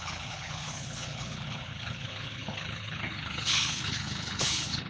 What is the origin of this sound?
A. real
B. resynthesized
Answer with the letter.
B